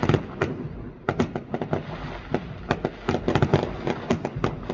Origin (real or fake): real